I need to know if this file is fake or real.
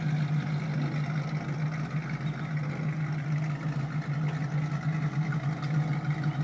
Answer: real